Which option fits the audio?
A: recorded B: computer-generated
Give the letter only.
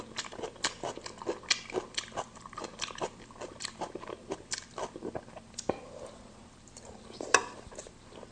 A